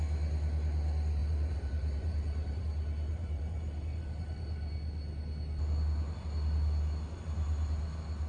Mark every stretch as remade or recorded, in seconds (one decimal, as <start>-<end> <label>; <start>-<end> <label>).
0.0-1.2 recorded; 1.2-2.6 remade; 2.6-3.1 recorded; 3.1-4.6 remade; 4.6-8.3 recorded